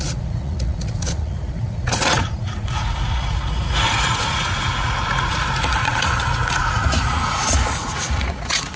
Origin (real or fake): fake